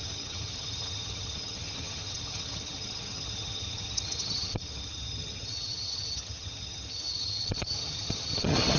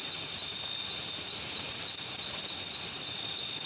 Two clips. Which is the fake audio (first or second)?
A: first